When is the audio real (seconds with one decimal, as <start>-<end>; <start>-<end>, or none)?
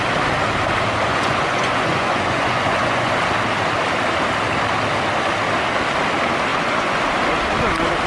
0.0-1.1; 3.1-6.5; 7.0-8.1